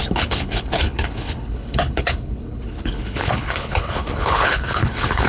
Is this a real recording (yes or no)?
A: no